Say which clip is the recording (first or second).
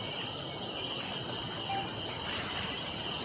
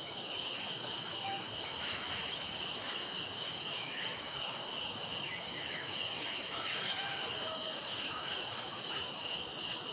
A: first